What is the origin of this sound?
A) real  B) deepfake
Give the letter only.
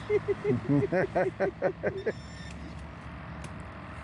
A